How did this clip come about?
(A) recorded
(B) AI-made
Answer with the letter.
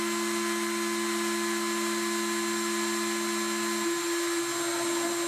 A